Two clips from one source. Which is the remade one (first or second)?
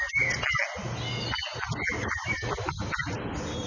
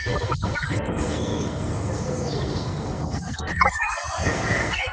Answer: second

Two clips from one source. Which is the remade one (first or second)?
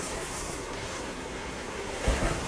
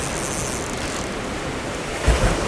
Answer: first